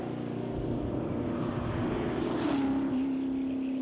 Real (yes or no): yes